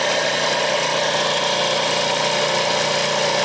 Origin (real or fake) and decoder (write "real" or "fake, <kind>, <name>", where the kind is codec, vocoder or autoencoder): real